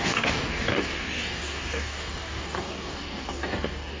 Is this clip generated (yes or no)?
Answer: yes